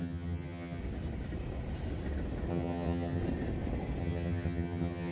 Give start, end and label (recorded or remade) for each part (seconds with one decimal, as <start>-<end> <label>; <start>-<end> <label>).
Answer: 0.0-0.8 remade; 0.8-2.5 recorded; 2.5-3.2 remade; 3.2-4.0 recorded; 4.0-5.1 remade